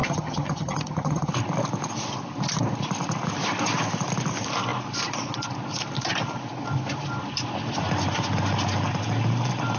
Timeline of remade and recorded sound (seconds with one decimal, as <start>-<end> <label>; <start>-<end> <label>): 0.0-1.3 remade; 1.3-9.8 recorded